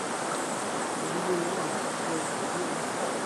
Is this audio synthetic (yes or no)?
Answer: no